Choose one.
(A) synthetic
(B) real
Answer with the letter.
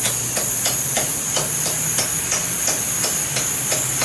B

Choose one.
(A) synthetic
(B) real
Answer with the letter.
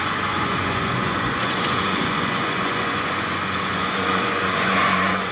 A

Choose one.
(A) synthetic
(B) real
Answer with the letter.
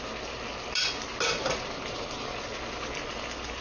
B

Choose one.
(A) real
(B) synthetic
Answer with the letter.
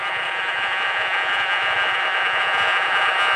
B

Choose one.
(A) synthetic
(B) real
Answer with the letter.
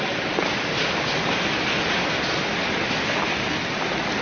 B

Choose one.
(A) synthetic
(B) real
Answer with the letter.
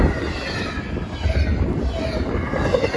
B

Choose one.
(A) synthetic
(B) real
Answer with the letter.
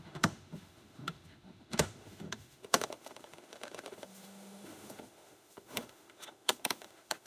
A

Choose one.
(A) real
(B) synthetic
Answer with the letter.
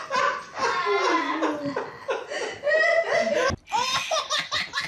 A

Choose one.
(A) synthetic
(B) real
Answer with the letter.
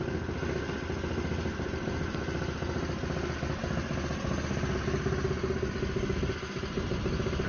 B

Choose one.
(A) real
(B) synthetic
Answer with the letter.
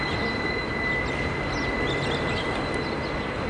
A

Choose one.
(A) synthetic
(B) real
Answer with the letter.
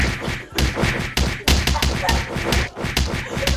B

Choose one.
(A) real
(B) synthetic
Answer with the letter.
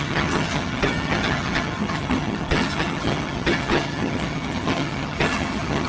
B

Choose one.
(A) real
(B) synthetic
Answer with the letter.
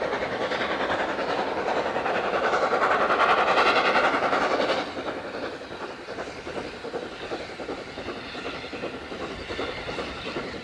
A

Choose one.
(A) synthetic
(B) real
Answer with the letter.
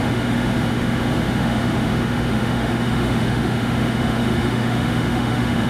A